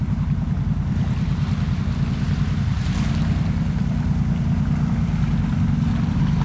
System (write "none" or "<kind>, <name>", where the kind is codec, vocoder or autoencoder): none